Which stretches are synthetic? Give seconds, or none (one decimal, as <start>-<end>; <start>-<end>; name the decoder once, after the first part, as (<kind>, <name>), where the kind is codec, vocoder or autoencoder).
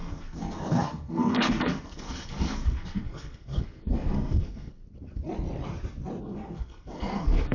0.0-4.8 (codec, SNAC); 6.2-7.5